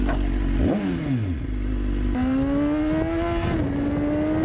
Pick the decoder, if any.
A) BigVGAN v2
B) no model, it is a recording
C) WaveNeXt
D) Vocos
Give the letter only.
B